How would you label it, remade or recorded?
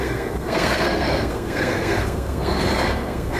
remade